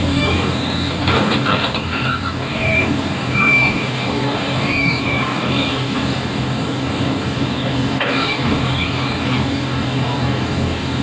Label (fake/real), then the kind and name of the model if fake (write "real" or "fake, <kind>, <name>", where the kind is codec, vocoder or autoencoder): fake, codec, DAC